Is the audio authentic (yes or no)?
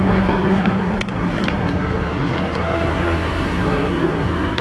no